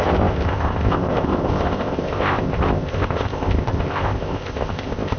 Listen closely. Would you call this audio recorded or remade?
remade